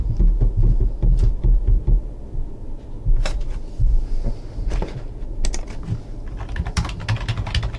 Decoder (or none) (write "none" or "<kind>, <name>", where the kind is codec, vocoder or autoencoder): none